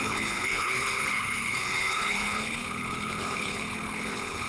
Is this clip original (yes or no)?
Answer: no